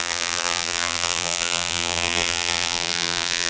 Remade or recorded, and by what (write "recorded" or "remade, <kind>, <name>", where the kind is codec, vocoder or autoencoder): remade, vocoder, BigVGAN v2